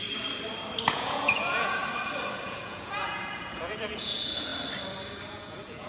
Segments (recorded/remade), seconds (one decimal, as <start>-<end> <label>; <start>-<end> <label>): 0.0-0.9 recorded; 0.9-1.8 remade; 1.8-2.4 recorded; 2.4-4.5 remade; 4.5-5.3 recorded; 5.3-5.9 remade